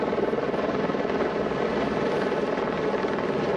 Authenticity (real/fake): real